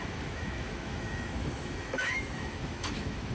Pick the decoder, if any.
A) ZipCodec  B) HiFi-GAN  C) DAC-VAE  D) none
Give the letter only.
C